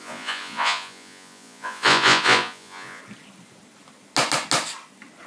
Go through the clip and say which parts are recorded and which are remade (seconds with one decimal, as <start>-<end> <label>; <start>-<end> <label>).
0.0-3.0 remade; 3.0-5.3 recorded